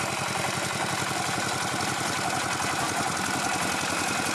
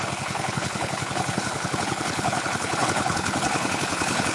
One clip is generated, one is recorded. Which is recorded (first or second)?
first